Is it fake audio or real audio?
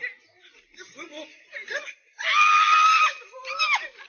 real